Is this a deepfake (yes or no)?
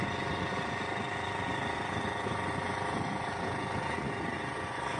yes